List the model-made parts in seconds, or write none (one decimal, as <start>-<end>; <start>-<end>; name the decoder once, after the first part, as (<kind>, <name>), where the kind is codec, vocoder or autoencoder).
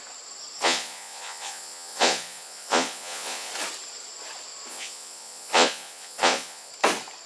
0.6-3.5 (vocoder, Vocos); 4.7-6.7